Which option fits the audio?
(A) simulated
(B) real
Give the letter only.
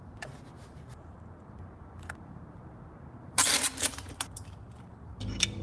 A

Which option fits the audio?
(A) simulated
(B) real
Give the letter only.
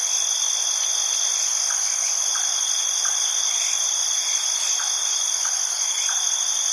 B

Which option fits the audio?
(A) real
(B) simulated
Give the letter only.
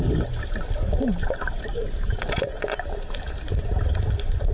B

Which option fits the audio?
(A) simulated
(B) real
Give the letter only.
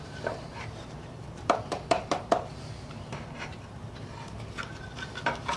A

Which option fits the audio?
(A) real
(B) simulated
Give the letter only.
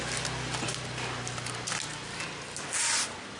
A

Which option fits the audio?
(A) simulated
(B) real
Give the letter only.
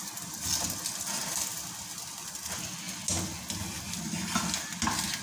B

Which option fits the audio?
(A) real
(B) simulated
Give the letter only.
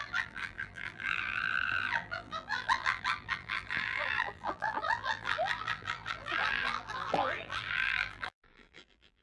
B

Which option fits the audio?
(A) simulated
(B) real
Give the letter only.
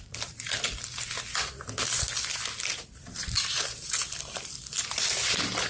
A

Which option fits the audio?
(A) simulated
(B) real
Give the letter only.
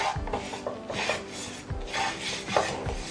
B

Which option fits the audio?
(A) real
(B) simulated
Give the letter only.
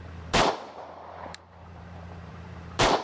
B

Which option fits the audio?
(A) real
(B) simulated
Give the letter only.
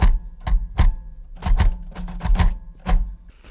A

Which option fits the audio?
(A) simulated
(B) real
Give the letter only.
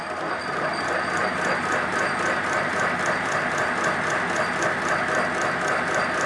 B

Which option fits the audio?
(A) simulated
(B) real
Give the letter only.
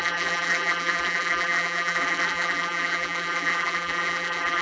A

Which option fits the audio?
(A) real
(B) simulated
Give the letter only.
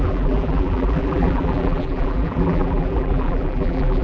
B